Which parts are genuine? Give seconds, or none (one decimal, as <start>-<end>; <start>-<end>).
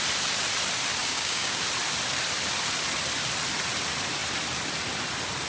0.0-1.0; 1.6-5.5